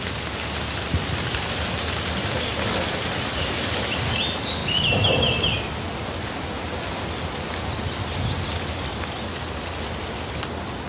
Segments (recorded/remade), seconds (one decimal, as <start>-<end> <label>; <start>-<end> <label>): 0.0-10.9 recorded